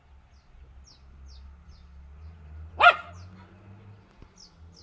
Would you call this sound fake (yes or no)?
no